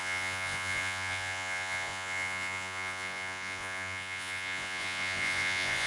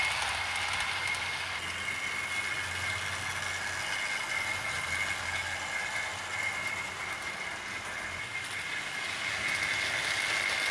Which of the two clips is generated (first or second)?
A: first